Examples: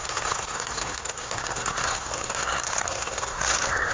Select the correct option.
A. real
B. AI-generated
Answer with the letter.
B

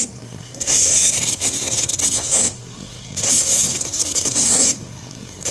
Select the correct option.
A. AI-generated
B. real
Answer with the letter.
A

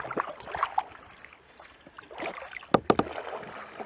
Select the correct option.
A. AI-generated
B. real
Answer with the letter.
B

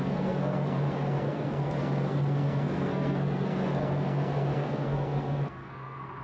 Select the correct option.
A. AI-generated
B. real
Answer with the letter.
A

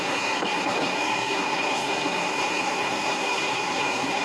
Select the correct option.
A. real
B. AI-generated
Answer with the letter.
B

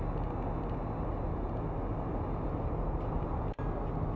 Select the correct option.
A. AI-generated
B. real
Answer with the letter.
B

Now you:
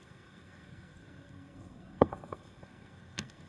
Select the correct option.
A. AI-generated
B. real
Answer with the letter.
A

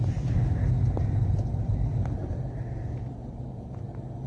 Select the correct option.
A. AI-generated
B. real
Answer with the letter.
B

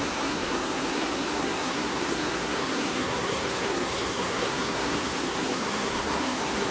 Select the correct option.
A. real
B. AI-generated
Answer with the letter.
B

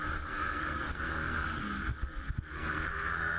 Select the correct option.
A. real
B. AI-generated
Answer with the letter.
B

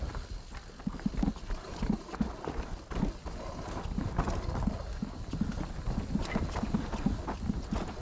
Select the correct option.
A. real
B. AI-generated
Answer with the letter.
A